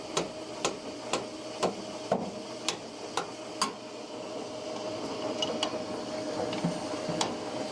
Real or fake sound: real